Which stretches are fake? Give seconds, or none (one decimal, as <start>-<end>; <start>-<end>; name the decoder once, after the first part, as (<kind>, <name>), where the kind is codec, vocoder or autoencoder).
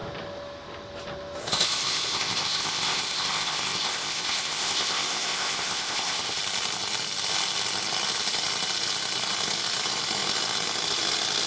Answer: 1.4-6.4 (codec, ZipCodec)